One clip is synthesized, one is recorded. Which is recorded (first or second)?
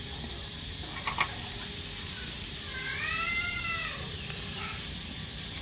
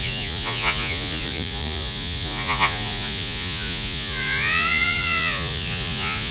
first